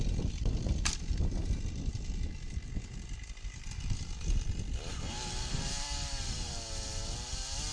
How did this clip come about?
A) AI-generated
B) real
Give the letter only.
A